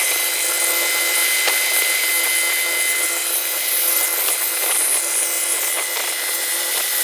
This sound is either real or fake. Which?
real